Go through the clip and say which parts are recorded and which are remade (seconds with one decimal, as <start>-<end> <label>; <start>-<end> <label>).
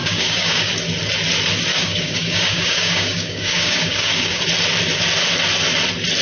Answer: 0.0-0.7 remade; 0.7-1.7 recorded; 1.7-4.4 remade; 4.4-6.2 recorded